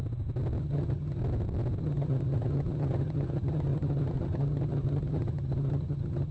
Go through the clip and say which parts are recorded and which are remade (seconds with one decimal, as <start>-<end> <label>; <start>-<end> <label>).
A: 0.0-0.6 recorded; 0.6-1.2 remade; 1.2-1.8 recorded; 1.8-6.3 remade